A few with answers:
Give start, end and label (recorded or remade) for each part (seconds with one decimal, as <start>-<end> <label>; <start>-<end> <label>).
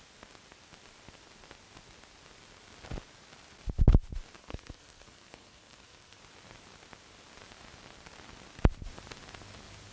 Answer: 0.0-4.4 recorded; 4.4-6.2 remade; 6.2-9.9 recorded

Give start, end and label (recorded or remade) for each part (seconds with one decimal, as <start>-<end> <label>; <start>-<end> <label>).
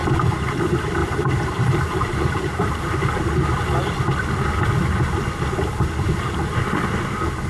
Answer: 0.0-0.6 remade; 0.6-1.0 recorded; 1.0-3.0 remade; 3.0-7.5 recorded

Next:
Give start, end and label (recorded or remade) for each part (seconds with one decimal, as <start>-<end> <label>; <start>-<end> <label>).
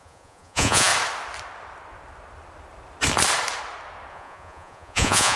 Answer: 0.0-0.9 remade; 0.9-4.1 recorded; 4.1-5.4 remade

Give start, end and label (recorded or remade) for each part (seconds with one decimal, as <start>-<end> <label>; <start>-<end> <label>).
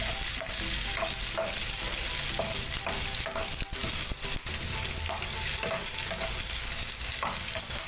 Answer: 0.0-7.9 recorded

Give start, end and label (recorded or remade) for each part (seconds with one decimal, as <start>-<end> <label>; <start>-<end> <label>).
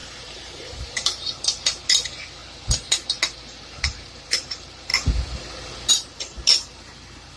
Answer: 0.0-1.3 remade; 1.3-7.4 recorded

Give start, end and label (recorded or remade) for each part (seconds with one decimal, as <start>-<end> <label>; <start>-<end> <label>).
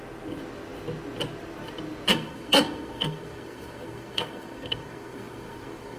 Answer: 0.0-2.1 recorded; 2.1-6.0 remade